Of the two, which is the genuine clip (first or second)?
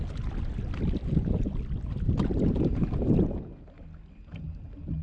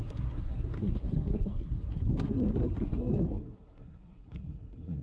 first